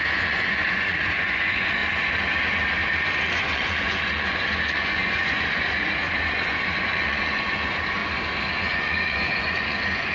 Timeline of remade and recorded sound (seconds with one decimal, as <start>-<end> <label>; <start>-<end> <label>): 0.0-1.8 remade; 1.8-3.2 recorded; 3.2-8.0 remade; 8.0-8.6 recorded; 8.6-10.1 remade